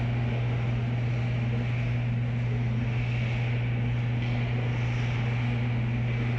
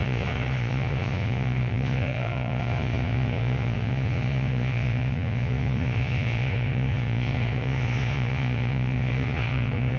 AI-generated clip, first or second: second